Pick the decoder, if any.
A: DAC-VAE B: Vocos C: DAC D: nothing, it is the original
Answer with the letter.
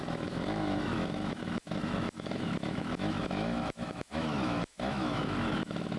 A